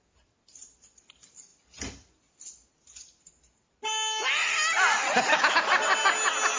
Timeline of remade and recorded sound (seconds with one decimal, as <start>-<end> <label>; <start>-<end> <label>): 0.0-6.6 recorded